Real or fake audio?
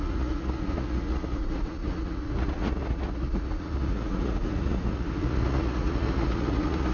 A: fake